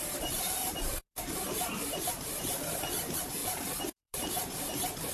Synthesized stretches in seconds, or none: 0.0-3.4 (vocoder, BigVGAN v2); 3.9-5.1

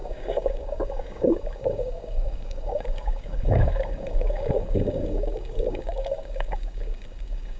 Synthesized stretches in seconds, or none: 0.0-7.6 (codec, DAC)

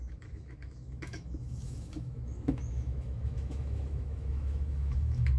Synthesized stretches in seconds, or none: 0.0-5.4 (autoencoder, DAC-VAE)

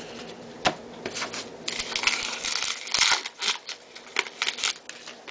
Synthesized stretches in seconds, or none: 0.5-1.0 (vocoder, BigVGAN v2)

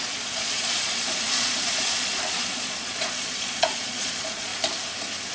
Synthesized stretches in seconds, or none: 0.0-4.5 (vocoder, Vocos)

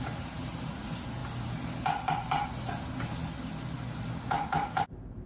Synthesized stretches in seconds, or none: none

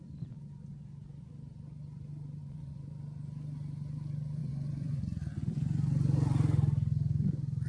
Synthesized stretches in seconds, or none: 2.4-2.9 (vocoder, Vocos); 4.4-5.0